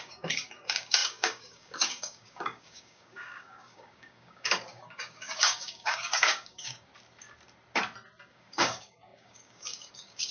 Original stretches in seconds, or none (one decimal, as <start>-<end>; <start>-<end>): 6.9-8.3